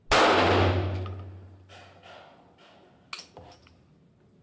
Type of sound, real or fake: real